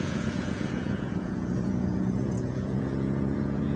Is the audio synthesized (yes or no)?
yes